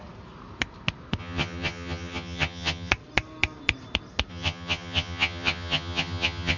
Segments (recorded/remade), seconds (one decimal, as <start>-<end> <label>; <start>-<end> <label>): 0.0-1.2 recorded; 1.2-2.9 remade; 2.9-4.3 recorded; 4.3-6.6 remade